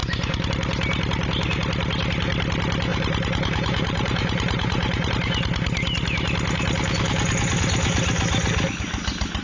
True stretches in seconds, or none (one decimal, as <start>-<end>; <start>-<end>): 0.5-2.9; 5.1-9.4